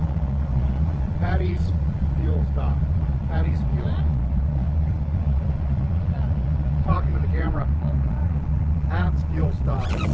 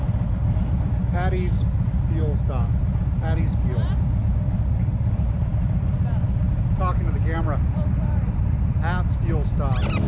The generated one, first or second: first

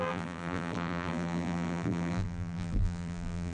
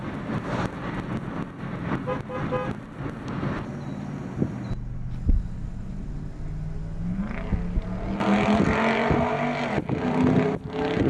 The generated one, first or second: first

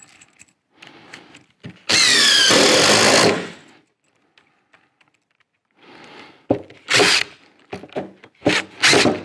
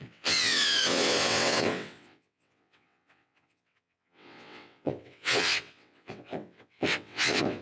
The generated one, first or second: second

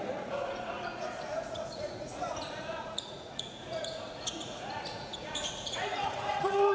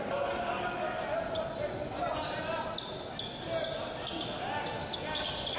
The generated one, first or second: first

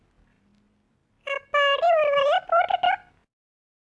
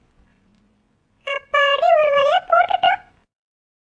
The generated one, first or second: second